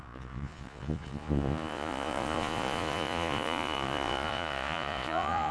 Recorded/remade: remade